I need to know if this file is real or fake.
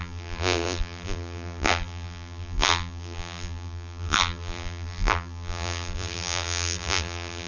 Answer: fake